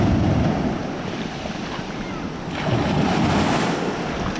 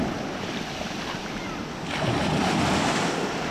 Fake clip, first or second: second